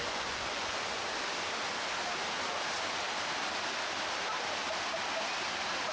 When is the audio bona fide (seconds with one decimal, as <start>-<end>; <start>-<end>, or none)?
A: 1.0-5.9